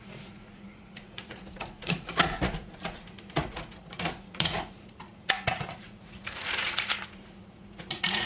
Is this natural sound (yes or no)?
no